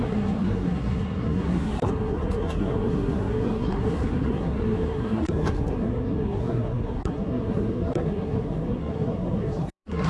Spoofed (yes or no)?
yes